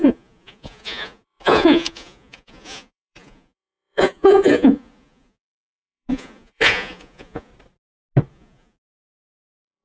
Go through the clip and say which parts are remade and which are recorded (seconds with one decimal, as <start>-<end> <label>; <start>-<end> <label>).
0.0-7.5 remade; 7.5-8.3 recorded; 8.3-9.8 remade